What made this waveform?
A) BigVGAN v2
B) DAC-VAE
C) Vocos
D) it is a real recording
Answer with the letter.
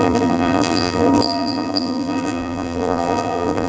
A